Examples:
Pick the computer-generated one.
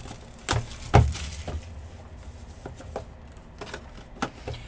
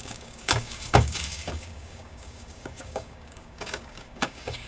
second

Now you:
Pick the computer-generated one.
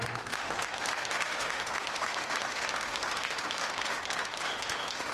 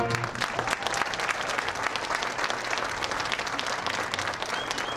first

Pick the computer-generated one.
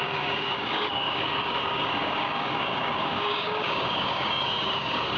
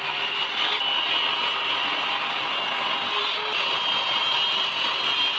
first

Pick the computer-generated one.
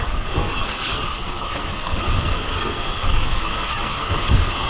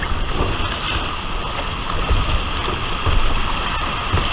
first